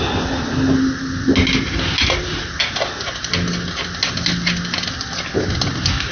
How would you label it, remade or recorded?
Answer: recorded